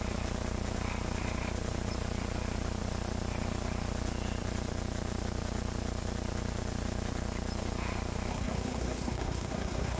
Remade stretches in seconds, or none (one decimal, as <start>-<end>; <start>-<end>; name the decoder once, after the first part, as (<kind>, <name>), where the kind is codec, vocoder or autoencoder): 8.3-10.0 (codec, SNAC)